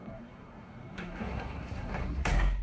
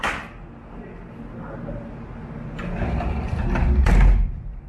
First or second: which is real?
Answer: second